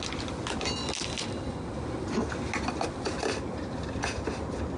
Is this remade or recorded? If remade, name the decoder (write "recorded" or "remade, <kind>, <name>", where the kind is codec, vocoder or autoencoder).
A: recorded